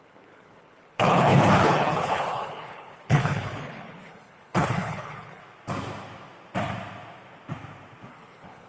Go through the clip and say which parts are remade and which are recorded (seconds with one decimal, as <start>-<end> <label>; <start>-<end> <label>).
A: 0.0-5.4 remade; 5.4-8.1 recorded; 8.1-8.7 remade